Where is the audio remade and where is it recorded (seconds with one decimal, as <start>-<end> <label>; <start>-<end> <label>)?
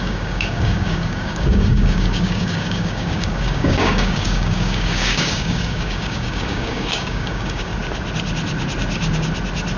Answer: 0.0-7.7 remade; 7.7-9.8 recorded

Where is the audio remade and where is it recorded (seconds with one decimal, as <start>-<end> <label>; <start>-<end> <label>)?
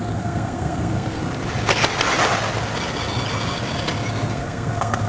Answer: 0.0-1.2 remade; 1.2-4.3 recorded; 4.3-5.1 remade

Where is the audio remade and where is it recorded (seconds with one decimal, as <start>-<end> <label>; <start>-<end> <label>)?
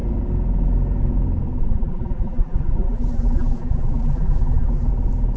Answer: 0.0-1.7 recorded; 1.7-4.9 remade; 4.9-5.4 recorded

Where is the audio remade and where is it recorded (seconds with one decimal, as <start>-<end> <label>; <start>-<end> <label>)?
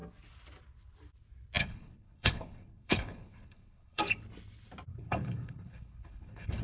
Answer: 0.0-1.6 recorded; 1.6-4.0 remade; 4.0-4.9 recorded; 4.9-6.6 remade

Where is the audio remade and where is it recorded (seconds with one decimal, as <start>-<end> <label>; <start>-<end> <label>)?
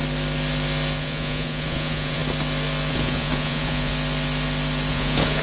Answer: 0.0-1.0 recorded; 1.0-2.2 remade; 2.2-2.9 recorded; 2.9-3.9 remade; 3.9-4.9 recorded; 4.9-5.4 remade